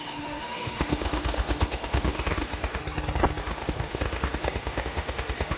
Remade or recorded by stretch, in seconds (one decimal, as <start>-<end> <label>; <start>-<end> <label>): 0.0-2.8 remade; 2.8-3.4 recorded; 3.4-5.6 remade